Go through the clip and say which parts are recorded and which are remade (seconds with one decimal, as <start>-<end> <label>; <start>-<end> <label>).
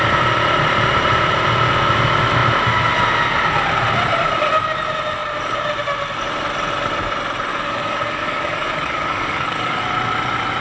0.0-7.5 recorded; 7.5-9.8 remade; 9.8-10.6 recorded